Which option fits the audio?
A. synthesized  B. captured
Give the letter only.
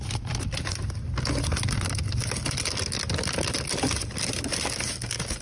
B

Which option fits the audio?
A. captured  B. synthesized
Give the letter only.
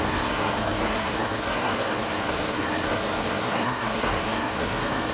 B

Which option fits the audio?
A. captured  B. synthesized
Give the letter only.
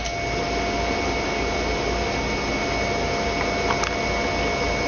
A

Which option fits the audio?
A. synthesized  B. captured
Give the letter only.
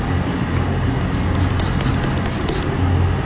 B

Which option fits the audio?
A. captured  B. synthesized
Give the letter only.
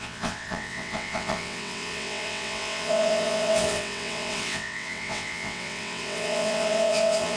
B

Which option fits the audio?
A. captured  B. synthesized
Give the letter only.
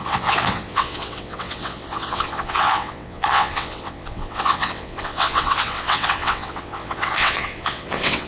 B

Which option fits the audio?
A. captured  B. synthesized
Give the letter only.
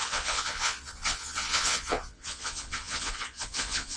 B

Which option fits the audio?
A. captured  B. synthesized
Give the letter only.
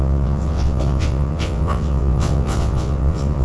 B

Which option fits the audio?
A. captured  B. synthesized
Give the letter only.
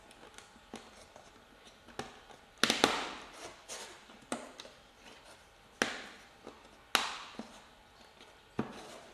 A